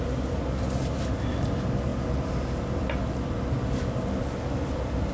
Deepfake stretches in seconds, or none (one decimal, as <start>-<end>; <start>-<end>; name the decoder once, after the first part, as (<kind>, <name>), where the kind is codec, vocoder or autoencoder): none